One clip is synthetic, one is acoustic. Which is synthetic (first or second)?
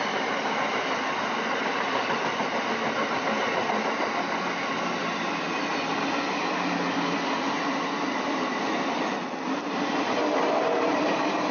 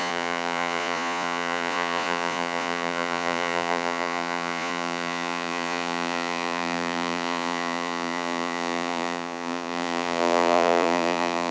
second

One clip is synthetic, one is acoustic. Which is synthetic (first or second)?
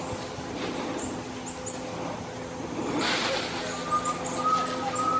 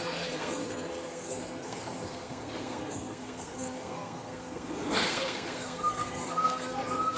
second